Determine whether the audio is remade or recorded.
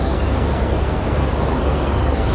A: remade